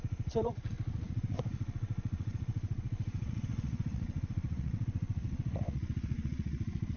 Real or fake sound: fake